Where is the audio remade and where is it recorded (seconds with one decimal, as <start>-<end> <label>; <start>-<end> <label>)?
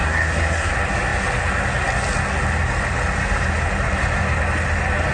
0.0-0.7 remade; 0.7-5.1 recorded